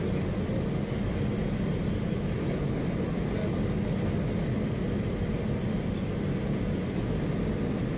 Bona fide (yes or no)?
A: yes